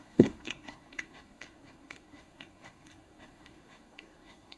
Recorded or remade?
remade